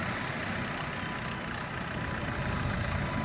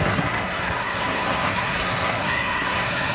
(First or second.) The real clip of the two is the first